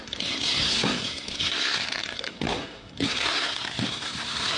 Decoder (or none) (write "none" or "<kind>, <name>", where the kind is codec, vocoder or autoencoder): codec, SNAC